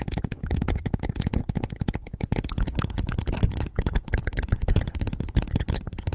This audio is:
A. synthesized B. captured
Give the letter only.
A